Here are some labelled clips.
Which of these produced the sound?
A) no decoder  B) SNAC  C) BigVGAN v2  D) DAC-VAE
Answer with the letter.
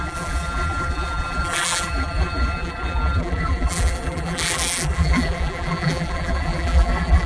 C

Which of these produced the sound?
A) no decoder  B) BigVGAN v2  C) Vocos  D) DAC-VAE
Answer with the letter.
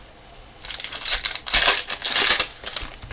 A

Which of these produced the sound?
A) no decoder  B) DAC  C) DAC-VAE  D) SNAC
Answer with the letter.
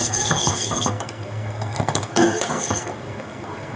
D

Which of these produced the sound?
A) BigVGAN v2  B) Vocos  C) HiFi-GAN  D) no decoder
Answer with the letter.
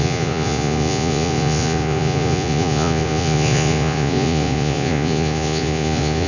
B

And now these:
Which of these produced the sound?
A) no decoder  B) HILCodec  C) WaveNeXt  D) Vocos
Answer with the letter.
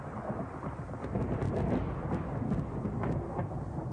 A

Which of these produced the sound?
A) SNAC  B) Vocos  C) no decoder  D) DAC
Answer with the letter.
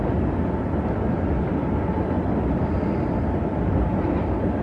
C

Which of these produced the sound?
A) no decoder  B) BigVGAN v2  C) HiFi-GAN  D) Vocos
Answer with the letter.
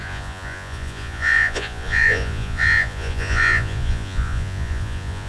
D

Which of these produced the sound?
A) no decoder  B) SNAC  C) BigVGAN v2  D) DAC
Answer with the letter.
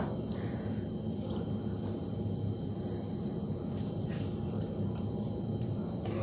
C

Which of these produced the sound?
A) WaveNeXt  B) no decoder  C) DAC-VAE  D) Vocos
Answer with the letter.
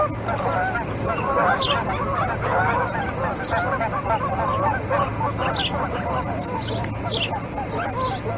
B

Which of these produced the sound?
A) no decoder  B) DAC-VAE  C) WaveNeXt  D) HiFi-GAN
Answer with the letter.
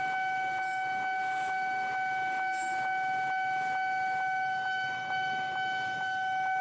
B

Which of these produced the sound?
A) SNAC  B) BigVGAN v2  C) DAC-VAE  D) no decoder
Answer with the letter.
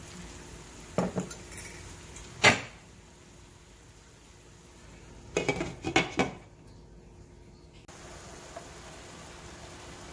D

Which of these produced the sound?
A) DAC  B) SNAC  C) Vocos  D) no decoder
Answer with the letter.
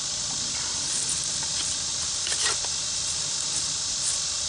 D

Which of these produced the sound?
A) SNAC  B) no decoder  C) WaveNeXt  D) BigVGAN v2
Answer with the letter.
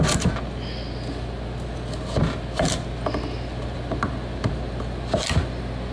B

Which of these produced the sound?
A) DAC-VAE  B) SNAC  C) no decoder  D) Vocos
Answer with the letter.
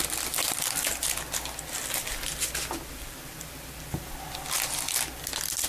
C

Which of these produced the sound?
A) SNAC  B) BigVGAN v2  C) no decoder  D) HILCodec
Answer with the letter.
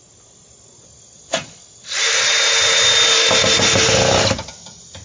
C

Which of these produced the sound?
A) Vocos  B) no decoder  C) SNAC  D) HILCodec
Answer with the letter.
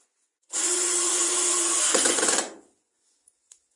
A